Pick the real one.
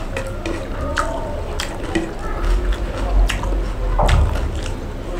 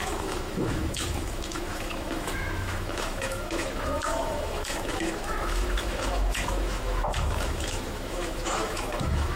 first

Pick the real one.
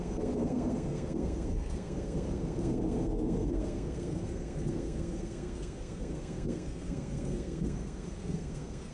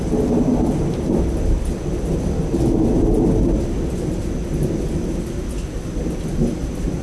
second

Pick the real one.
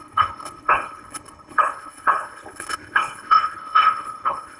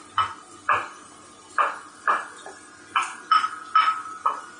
second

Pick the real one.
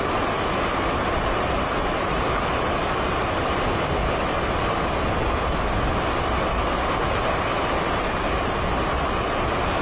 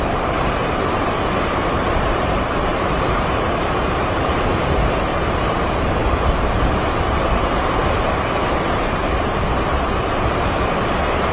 first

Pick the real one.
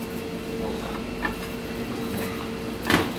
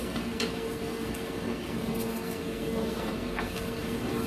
first